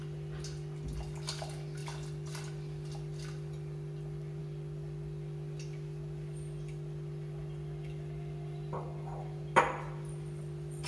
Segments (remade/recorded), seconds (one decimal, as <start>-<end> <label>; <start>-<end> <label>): 0.0-10.9 recorded